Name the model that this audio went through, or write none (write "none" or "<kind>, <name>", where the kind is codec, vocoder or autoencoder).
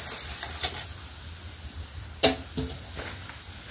none